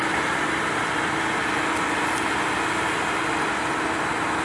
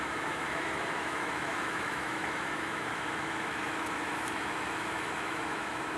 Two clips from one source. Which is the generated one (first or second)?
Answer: second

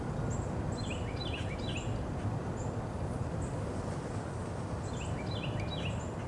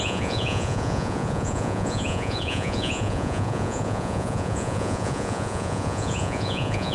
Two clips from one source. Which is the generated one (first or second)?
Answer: second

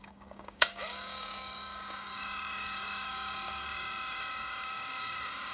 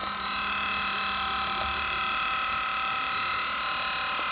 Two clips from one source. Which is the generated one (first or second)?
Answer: first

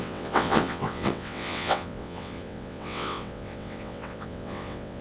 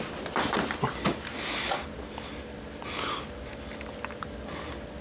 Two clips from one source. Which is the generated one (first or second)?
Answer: first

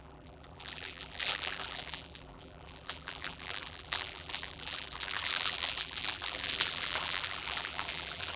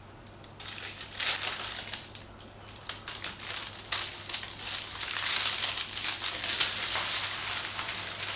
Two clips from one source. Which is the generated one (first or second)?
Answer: first